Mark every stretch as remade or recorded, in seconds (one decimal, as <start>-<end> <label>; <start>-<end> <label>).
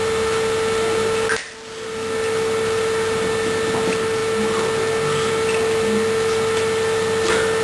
0.0-7.6 recorded